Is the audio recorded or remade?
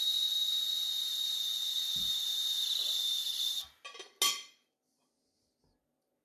recorded